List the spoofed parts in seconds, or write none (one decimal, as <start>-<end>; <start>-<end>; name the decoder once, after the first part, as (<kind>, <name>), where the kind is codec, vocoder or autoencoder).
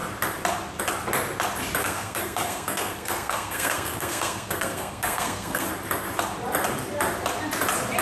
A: 1.8-5.7 (codec, SNAC)